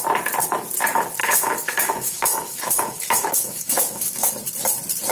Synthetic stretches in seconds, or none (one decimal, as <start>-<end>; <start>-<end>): 1.2-4.3